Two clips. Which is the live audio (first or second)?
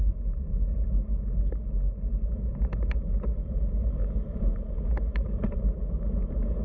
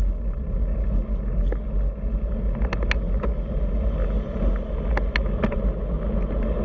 second